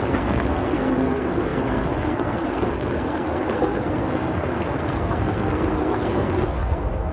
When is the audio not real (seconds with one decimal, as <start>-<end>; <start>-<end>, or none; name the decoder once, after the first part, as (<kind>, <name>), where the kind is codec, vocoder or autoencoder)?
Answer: 0.0-7.1 (codec, SNAC)